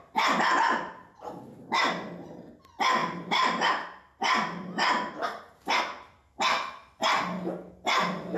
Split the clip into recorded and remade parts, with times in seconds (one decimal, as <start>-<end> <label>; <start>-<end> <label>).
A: 0.0-3.0 recorded; 3.0-5.8 remade; 5.8-8.4 recorded